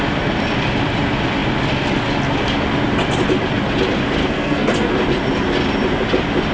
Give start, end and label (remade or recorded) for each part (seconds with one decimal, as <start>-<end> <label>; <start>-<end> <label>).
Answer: 0.0-4.2 recorded; 4.2-4.9 remade; 4.9-6.5 recorded